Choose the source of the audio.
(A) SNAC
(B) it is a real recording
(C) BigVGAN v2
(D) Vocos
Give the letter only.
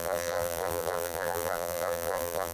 C